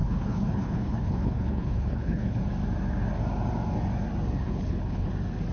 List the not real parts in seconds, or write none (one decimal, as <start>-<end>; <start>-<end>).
0.0-2.4; 4.5-5.1